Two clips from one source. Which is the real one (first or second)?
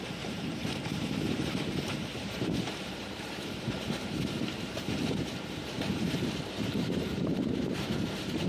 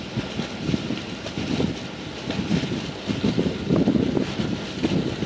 second